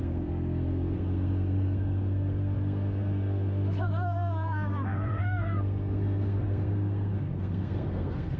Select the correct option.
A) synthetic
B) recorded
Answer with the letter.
A